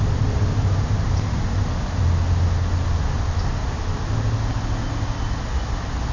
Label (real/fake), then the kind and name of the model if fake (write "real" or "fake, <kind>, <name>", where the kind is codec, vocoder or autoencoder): real